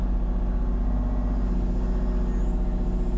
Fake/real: real